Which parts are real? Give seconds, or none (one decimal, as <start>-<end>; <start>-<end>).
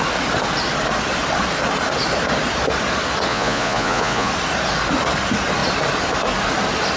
0.0-3.3; 4.3-7.0